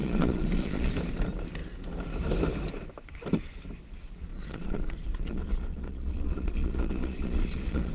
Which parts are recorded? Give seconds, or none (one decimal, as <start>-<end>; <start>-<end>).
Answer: 0.9-4.3